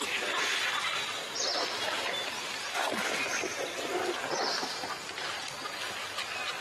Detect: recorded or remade recorded